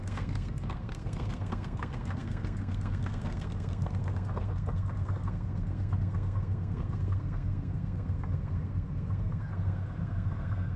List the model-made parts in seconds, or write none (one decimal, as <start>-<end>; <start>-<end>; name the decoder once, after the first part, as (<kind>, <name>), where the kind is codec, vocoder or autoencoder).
0.0-10.8 (codec, SNAC)